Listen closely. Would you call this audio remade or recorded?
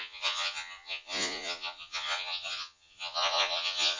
remade